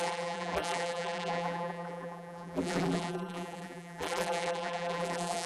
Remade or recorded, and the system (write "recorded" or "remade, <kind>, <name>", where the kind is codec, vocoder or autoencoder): remade, vocoder, BigVGAN v2